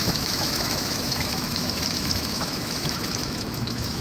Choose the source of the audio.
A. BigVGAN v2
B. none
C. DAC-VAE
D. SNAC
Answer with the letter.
C